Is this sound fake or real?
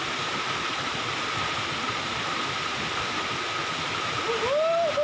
real